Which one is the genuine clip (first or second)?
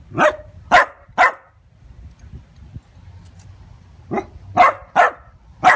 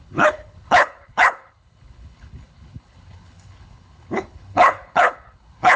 first